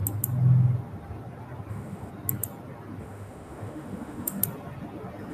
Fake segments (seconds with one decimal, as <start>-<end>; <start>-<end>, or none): 1.7-2.1; 3.0-4.4